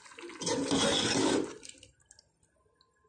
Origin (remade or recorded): recorded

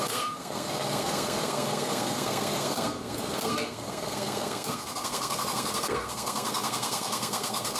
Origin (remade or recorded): remade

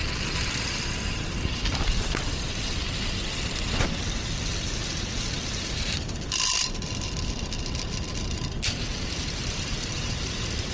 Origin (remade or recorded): recorded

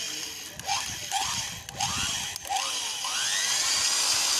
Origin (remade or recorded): recorded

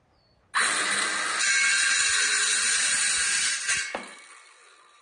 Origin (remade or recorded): recorded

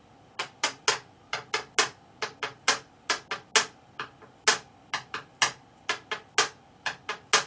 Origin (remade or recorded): recorded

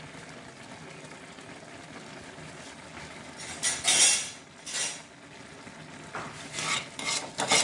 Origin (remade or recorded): recorded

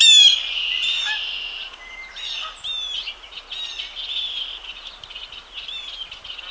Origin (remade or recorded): recorded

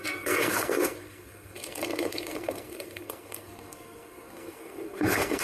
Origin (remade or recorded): remade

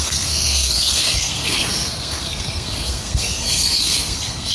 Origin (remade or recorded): remade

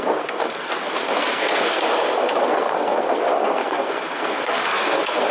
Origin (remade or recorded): remade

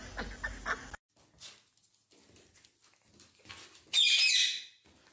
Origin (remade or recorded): recorded